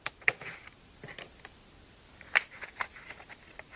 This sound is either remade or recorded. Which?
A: recorded